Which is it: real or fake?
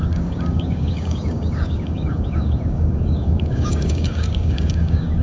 fake